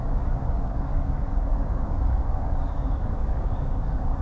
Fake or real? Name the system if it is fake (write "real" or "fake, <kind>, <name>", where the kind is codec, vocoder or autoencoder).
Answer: fake, codec, DAC